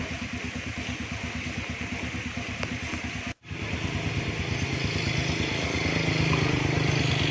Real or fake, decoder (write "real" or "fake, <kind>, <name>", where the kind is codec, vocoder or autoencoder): real